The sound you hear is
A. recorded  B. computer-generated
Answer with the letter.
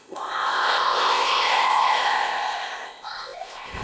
B